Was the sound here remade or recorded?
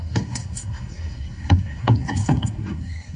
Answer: remade